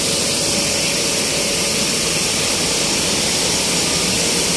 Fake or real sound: real